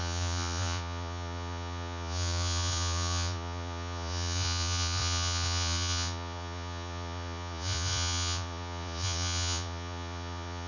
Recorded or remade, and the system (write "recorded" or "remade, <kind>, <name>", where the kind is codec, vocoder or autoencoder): remade, vocoder, Vocos